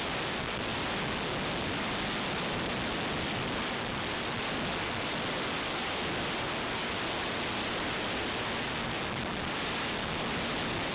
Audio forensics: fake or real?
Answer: real